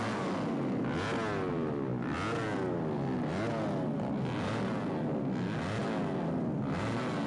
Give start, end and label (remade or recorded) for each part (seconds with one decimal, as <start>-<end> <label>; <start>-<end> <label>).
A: 0.0-7.3 recorded